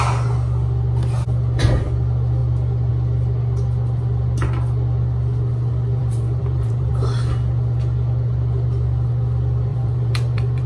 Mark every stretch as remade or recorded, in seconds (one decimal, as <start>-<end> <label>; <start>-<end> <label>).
0.0-6.0 recorded; 6.0-6.9 remade; 6.9-9.7 recorded; 9.7-10.7 remade